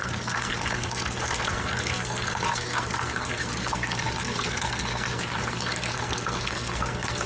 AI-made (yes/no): yes